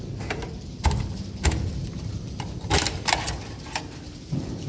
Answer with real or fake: real